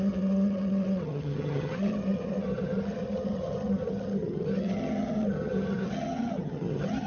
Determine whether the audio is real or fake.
fake